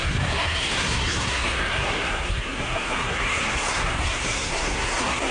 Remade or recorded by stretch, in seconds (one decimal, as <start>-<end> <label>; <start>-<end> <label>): 0.0-5.3 remade